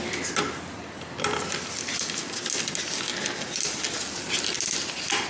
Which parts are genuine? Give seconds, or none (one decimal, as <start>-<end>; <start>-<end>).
0.0-5.3